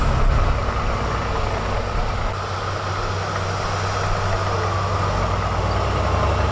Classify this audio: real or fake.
real